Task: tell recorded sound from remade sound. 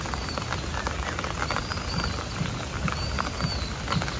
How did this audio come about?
recorded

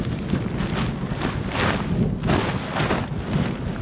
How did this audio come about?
recorded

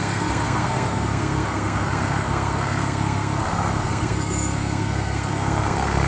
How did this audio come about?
remade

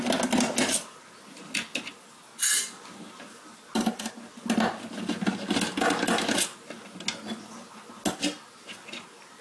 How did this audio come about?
recorded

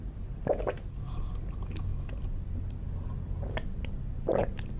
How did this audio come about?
recorded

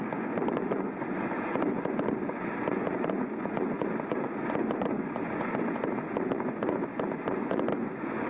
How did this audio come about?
remade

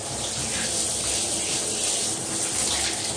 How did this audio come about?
recorded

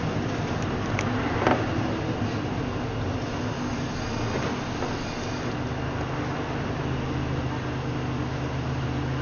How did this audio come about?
recorded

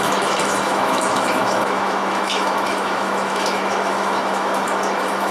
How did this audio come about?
remade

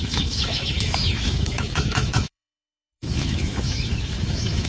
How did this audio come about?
remade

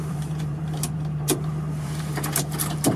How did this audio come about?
remade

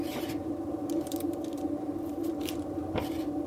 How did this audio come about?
remade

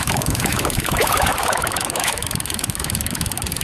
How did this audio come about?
remade